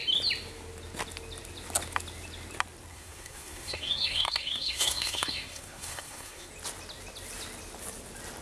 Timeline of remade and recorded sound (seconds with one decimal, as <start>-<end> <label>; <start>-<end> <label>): 0.0-2.9 recorded; 2.9-6.5 remade; 6.5-8.4 recorded